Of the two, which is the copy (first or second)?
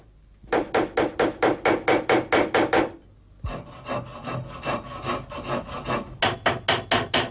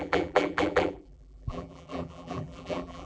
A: second